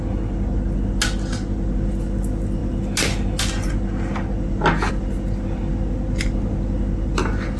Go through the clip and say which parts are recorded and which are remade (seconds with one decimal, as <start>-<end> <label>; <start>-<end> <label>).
0.0-7.6 recorded